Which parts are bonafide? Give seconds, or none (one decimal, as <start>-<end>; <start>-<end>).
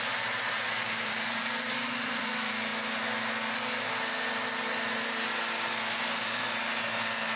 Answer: 2.7-7.4